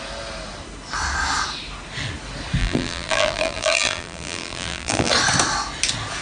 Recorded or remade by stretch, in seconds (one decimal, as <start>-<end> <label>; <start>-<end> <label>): 0.0-2.6 recorded; 2.6-5.1 remade; 5.1-6.2 recorded